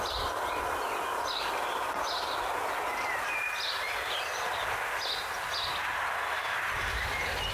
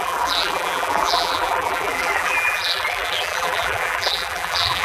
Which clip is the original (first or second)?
first